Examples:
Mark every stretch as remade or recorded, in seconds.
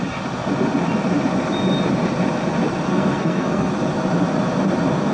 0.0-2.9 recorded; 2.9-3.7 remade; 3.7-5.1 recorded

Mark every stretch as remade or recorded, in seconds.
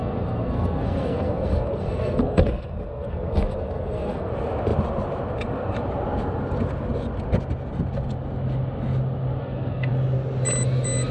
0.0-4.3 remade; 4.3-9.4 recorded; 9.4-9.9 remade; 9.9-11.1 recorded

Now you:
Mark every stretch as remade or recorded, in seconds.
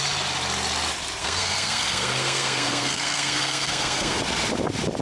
0.0-1.2 recorded; 1.2-4.2 remade; 4.2-5.0 recorded